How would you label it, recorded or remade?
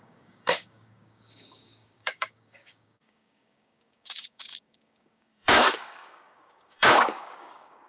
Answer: remade